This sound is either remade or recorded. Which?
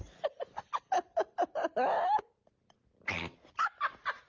recorded